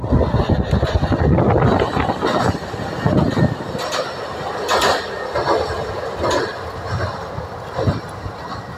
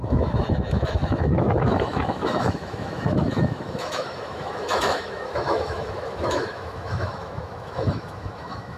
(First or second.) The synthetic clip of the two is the second